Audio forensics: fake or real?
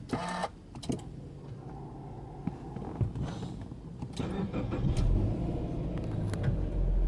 real